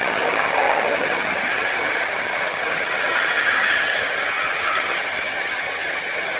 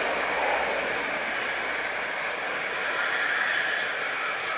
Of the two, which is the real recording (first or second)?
second